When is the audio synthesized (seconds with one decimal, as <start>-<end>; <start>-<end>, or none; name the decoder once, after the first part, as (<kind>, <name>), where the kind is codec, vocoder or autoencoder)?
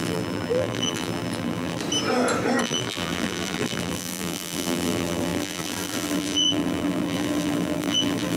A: 0.0-1.8 (vocoder, BigVGAN v2); 2.6-8.4